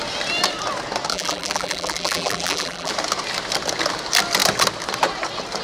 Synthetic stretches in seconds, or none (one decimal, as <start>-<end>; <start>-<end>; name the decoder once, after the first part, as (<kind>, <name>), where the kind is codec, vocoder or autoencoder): 1.1-2.9 (vocoder, BigVGAN v2)